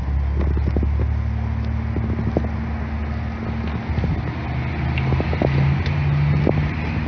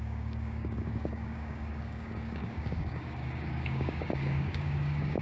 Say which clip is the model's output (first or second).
second